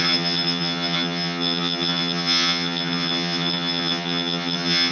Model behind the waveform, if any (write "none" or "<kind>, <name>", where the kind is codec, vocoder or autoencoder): vocoder, HiFi-GAN